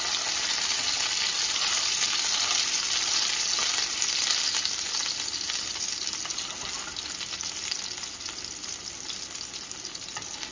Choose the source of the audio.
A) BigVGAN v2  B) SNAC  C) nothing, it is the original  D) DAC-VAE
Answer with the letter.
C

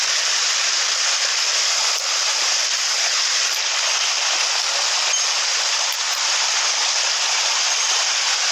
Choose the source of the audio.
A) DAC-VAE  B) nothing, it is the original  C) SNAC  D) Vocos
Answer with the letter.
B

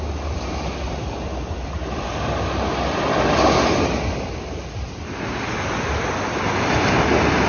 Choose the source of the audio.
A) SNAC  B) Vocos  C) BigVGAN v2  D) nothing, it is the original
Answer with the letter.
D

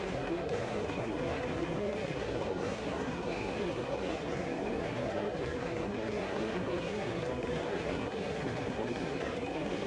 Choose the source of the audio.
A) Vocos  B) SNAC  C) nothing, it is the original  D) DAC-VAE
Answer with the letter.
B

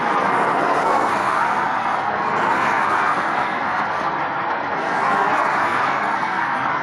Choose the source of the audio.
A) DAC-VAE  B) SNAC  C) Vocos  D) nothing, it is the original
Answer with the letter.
B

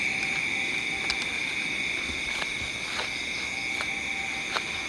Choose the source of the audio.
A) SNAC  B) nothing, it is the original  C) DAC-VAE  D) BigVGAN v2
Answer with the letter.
B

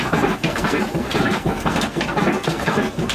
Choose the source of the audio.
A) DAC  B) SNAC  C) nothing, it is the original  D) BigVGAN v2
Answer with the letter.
B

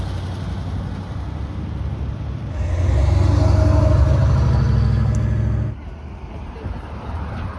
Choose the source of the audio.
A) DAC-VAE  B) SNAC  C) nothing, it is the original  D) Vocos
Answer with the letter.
C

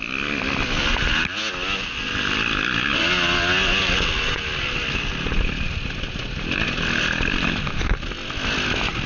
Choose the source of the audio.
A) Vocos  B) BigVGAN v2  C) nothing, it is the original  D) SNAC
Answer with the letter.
C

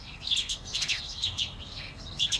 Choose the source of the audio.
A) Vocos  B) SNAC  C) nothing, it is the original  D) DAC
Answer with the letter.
B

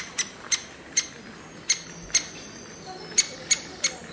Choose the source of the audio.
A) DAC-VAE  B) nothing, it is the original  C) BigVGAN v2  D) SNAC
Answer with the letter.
B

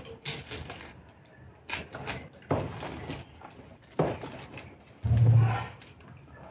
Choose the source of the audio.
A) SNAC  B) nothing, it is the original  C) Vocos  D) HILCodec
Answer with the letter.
B